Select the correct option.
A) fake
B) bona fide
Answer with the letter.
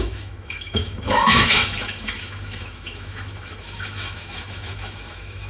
A